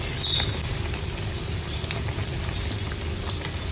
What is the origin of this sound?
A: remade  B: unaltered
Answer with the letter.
B